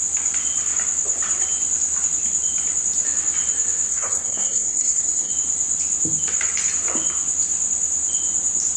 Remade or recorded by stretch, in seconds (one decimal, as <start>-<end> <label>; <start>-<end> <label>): 0.0-3.9 recorded; 3.9-5.3 remade; 5.3-8.8 recorded